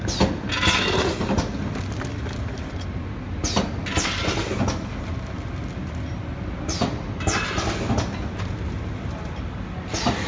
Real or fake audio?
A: real